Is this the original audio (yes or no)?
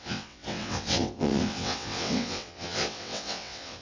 no